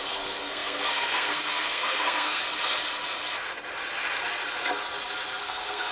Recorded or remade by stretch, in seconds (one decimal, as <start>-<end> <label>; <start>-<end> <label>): 0.0-2.4 remade; 2.4-5.4 recorded; 5.4-5.9 remade